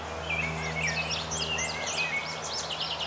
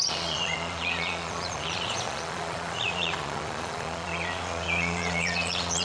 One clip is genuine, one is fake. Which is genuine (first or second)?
first